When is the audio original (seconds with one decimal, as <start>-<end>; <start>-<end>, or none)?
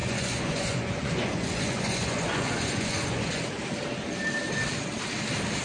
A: 3.4-5.6